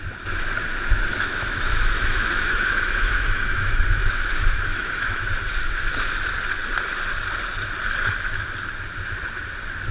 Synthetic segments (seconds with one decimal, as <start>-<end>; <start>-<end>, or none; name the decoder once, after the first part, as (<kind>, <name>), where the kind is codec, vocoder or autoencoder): 1.1-5.4 (autoencoder, DAC-VAE)